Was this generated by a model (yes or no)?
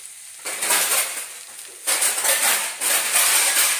no